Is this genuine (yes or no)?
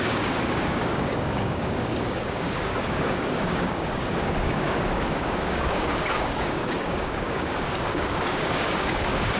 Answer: no